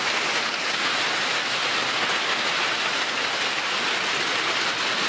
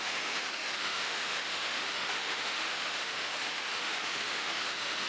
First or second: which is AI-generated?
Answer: second